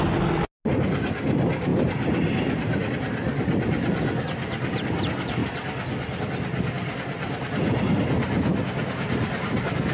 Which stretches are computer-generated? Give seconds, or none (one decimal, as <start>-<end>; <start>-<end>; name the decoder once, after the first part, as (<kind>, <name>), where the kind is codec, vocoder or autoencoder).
none